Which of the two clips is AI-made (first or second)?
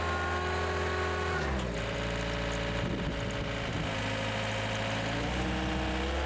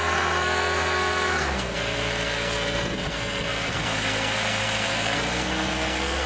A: second